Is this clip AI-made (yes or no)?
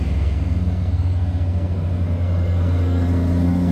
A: yes